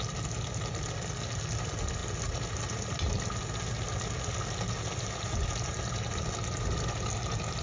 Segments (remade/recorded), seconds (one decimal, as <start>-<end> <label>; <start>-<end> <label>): 0.0-7.6 recorded